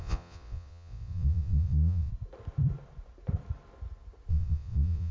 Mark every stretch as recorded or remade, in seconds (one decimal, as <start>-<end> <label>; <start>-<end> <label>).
0.0-2.1 remade; 2.1-4.3 recorded; 4.3-5.1 remade